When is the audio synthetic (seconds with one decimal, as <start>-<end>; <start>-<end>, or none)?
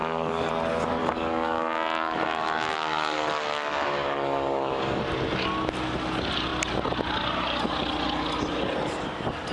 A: 0.0-0.5; 1.0-5.0